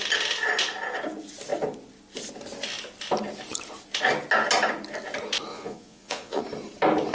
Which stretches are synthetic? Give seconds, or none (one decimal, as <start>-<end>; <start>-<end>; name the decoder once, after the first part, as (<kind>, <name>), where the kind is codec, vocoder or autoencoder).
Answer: 5.5-6.4 (vocoder, Vocos)